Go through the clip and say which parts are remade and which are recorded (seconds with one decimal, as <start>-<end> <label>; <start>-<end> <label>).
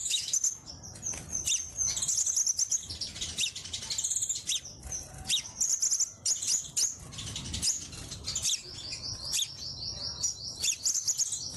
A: 0.0-0.7 remade; 0.7-11.6 recorded